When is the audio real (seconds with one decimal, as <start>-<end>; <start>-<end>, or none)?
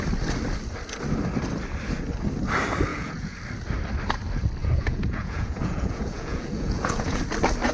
0.0-2.9; 3.4-4.6; 7.2-7.7